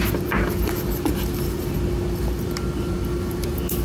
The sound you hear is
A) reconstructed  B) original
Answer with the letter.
B